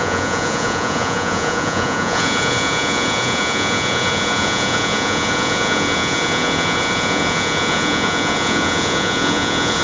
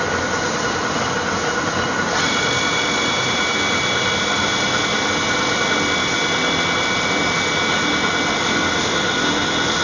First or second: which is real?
second